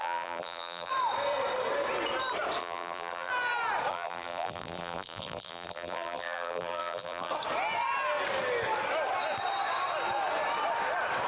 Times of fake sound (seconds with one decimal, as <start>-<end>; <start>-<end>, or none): 0.0-0.9; 2.6-3.3; 3.9-7.3